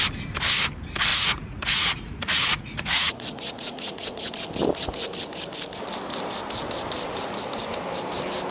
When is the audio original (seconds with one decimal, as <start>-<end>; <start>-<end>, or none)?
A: 0.0-1.1; 4.3-8.5